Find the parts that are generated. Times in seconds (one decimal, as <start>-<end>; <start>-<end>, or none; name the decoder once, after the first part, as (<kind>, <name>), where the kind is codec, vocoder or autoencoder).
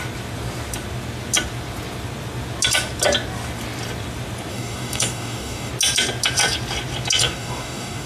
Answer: 4.5-5.7 (codec, DAC); 7.2-8.1